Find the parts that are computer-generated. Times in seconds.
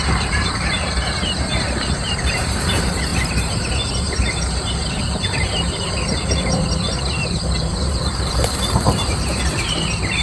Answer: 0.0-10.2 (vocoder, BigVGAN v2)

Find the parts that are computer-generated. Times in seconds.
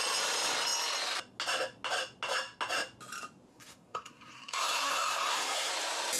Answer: 3.5-5.7 (codec, SNAC)